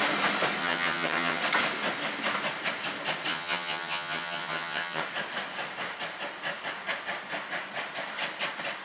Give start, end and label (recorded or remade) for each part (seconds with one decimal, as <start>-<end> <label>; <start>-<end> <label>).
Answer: 0.0-0.6 recorded; 0.6-1.4 remade; 1.4-3.3 recorded; 3.3-5.0 remade; 5.0-8.8 recorded